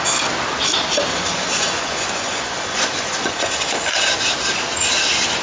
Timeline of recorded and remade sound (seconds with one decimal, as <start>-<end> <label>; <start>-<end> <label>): 0.0-1.1 recorded; 1.1-4.3 remade; 4.3-5.4 recorded